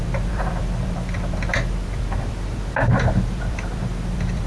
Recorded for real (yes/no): no